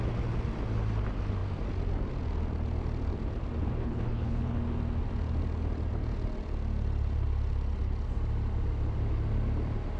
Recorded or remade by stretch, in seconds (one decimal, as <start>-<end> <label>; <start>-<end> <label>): 0.0-3.8 recorded; 3.8-4.6 remade; 4.6-10.0 recorded

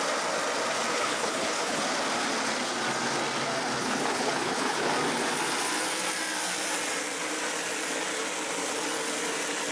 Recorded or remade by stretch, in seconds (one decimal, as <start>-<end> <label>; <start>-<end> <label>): 0.0-0.9 recorded; 0.9-1.8 remade; 1.8-3.8 recorded; 3.8-4.9 remade; 4.9-9.7 recorded

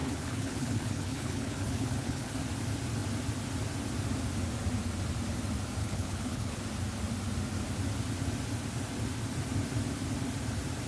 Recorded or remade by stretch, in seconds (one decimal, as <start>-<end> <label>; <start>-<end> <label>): 0.0-2.3 remade; 2.3-5.8 recorded; 5.8-6.6 remade; 6.6-10.9 recorded

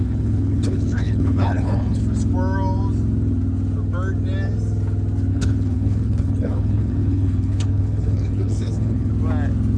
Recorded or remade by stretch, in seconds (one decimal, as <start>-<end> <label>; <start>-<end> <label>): 0.0-2.0 remade; 2.0-5.3 recorded; 5.3-9.1 remade; 9.1-9.8 recorded

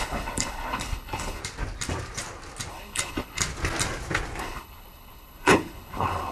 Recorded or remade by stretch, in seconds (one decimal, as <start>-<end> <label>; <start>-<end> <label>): 0.0-1.4 remade; 1.4-2.7 recorded; 2.7-3.4 remade; 3.4-4.4 recorded; 4.4-6.3 remade